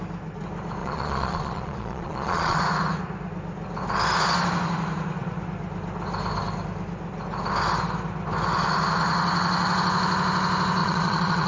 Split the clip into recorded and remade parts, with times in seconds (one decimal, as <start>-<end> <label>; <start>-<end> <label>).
0.0-0.8 recorded; 0.8-2.6 remade; 2.6-10.8 recorded; 10.8-11.5 remade

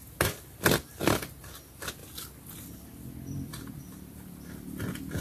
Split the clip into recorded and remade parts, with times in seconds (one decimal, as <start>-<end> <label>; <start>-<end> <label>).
0.0-5.2 recorded

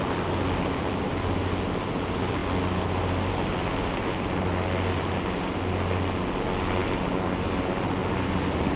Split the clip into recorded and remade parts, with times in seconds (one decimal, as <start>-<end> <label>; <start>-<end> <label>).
0.0-8.8 recorded

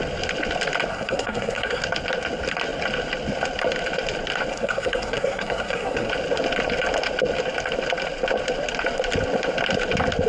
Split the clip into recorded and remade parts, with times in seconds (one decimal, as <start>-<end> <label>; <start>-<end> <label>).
0.0-0.9 recorded; 0.9-1.8 remade; 1.8-4.5 recorded; 4.5-6.1 remade; 6.1-10.3 recorded